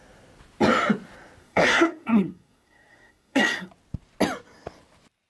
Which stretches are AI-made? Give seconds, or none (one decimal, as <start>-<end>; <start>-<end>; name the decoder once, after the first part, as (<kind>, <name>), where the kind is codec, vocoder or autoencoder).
1.4-3.7 (codec, SNAC)